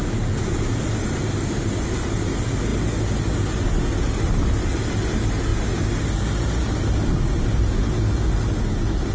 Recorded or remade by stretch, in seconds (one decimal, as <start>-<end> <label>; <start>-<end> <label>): 0.0-9.1 recorded